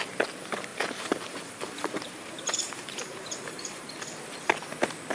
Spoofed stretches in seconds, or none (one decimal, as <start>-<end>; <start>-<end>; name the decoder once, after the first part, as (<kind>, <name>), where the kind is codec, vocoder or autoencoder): 0.7-3.8 (vocoder, BigVGAN v2)